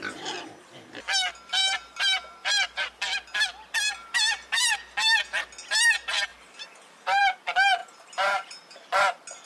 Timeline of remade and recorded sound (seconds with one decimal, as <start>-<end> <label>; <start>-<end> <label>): 0.0-1.6 recorded; 1.6-3.0 remade; 3.0-4.0 recorded; 4.0-4.6 remade; 4.6-6.3 recorded; 6.3-7.2 remade; 7.2-7.8 recorded; 7.8-8.6 remade; 8.6-9.5 recorded